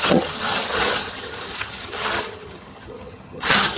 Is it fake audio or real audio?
fake